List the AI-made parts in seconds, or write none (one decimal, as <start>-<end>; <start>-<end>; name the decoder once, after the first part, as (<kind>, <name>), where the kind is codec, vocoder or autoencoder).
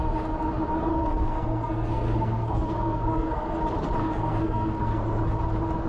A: 0.9-3.6 (codec, SNAC); 4.0-5.2